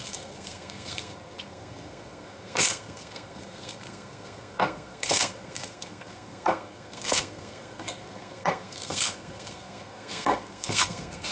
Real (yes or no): no